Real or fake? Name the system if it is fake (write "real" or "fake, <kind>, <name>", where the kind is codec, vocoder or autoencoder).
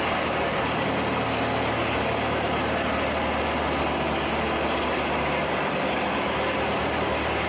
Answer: real